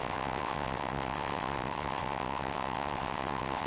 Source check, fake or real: fake